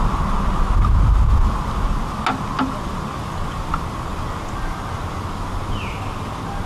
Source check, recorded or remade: recorded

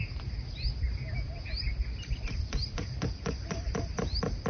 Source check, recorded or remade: recorded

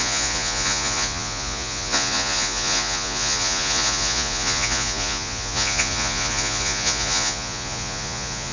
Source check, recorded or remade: remade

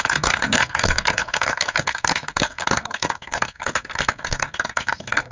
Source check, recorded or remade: remade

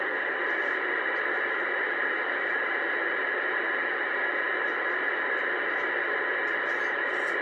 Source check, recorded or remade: recorded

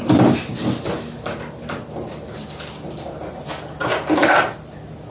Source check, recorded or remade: recorded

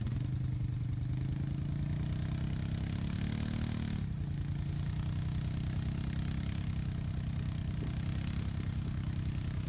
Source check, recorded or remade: recorded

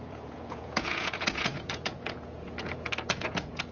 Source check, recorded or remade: remade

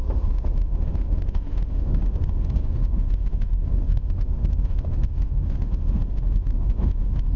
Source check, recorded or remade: remade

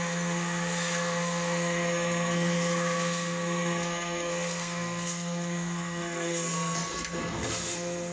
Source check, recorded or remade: remade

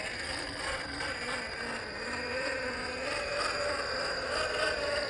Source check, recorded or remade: recorded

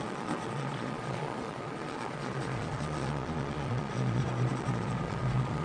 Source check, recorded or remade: remade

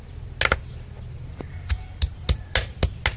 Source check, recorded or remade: recorded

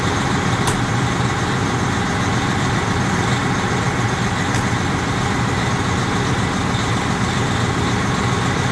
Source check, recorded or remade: recorded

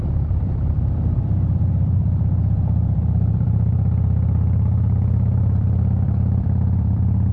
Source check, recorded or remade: remade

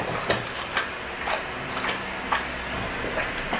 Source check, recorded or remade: recorded